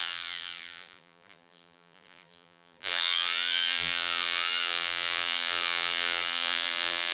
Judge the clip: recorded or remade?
remade